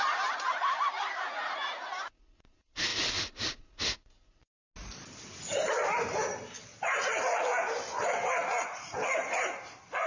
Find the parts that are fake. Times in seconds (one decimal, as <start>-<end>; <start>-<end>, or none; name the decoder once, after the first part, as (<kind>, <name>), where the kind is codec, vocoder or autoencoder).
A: none